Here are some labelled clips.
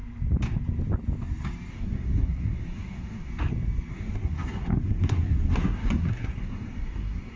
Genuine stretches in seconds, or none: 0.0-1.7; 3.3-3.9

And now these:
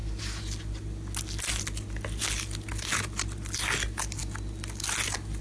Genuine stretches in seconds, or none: 0.0-5.4

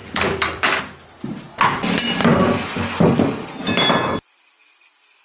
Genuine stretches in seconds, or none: 0.8-5.2

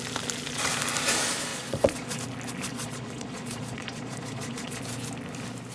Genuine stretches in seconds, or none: 0.0-1.5; 2.2-2.7; 4.8-5.7